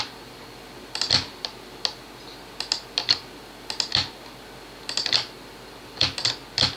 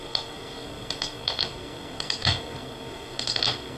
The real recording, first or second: first